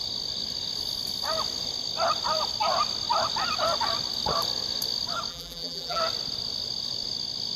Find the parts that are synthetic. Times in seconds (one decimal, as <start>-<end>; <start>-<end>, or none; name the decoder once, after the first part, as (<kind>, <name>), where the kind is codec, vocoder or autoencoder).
5.3-6.0 (vocoder, BigVGAN v2)

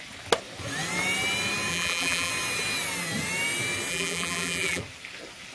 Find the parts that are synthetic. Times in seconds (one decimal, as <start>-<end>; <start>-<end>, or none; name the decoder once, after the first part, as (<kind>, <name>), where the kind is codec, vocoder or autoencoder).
1.7-2.3 (vocoder, BigVGAN v2); 3.9-4.8

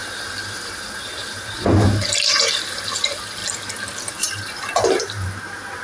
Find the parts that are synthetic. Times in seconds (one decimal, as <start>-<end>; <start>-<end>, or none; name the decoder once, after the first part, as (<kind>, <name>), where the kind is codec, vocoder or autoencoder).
0.0-3.4 (vocoder, BigVGAN v2); 4.1-5.8

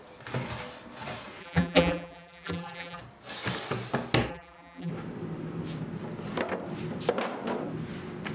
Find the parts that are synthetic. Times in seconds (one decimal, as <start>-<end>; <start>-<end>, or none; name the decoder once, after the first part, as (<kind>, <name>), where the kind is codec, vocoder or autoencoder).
1.4-3.0 (vocoder, BigVGAN v2); 4.3-4.9